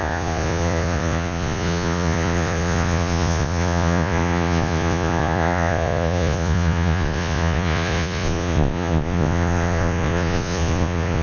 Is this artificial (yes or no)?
yes